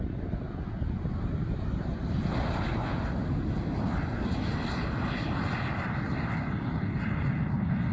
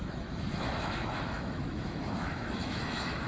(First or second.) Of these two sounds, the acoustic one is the first